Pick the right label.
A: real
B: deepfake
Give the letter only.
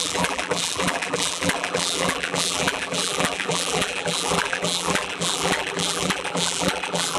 B